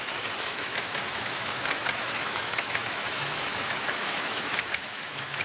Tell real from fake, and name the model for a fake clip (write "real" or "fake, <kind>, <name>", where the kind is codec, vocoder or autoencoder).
fake, autoencoder, DAC-VAE